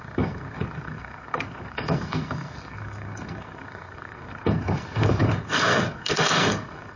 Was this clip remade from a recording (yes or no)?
yes